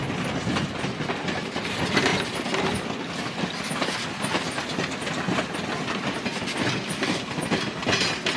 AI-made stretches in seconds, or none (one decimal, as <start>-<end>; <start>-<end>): none